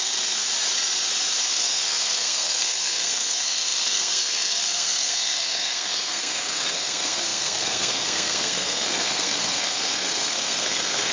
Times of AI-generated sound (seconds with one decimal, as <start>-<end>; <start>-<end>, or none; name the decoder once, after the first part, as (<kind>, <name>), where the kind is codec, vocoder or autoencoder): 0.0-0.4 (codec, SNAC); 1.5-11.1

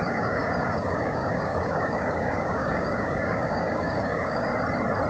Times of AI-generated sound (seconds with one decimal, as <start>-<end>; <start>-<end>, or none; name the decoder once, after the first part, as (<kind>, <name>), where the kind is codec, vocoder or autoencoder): 0.0-4.5 (codec, DAC)

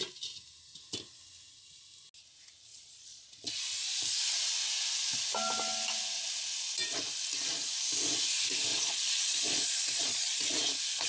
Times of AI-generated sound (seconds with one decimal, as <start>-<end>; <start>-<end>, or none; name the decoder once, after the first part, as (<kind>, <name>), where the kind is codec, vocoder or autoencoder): 2.7-3.6 (vocoder, Vocos); 8.7-10.4